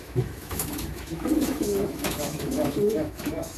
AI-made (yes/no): yes